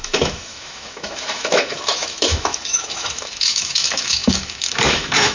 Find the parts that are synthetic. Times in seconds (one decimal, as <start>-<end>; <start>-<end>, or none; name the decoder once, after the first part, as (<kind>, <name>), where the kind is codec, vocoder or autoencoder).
0.0-5.3 (autoencoder, DAC-VAE)